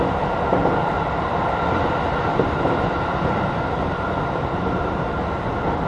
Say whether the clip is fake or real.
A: real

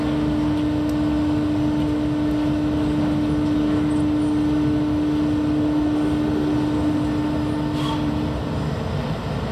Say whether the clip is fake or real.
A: real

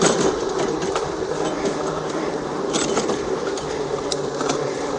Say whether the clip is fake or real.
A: fake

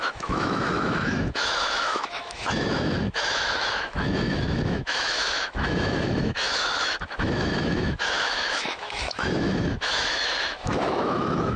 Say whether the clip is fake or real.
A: fake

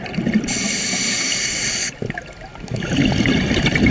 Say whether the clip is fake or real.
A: real